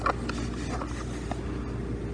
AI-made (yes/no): no